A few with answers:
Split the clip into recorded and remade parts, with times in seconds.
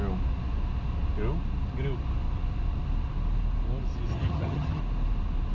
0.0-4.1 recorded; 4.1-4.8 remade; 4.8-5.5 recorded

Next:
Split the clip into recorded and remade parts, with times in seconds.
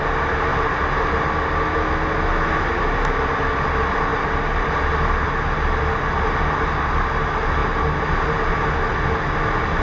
0.0-9.8 recorded